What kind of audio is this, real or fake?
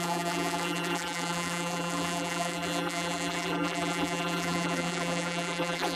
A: fake